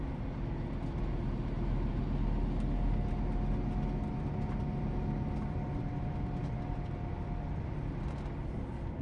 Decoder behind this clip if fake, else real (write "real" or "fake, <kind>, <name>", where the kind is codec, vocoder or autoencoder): real